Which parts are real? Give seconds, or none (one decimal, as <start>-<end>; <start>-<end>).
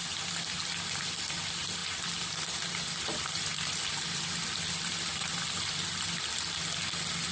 0.0-7.3